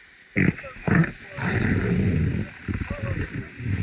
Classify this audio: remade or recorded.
recorded